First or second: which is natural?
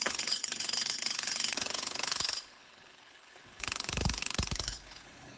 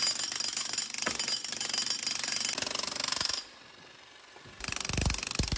second